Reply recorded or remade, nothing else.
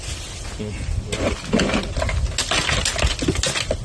recorded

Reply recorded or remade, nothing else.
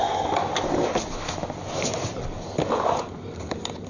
recorded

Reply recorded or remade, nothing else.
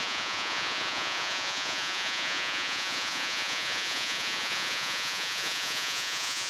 remade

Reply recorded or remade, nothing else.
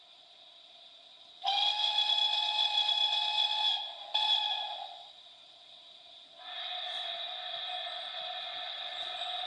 recorded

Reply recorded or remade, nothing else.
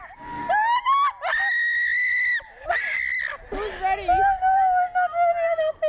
recorded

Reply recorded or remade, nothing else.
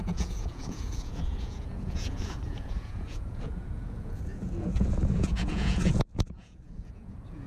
remade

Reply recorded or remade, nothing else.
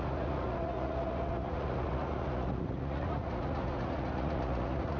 remade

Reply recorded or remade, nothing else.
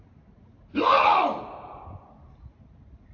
recorded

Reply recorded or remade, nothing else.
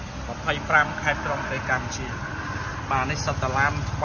recorded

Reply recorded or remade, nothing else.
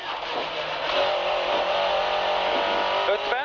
recorded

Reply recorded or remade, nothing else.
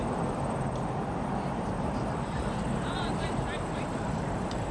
remade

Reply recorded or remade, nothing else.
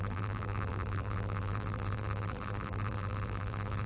remade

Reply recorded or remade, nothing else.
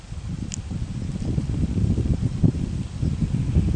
recorded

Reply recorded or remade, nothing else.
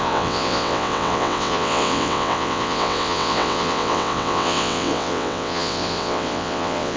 remade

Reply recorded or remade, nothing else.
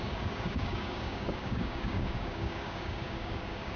remade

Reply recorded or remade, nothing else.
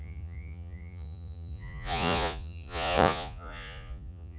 remade